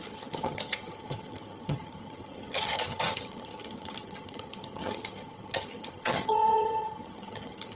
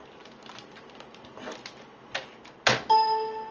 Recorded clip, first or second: second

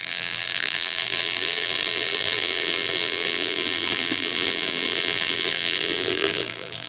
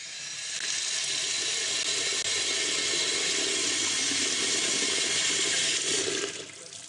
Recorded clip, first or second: second